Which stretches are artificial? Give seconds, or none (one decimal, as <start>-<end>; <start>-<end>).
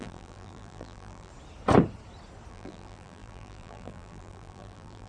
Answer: 0.0-1.3; 2.5-5.1